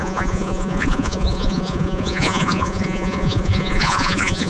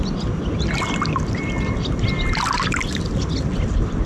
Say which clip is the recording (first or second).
second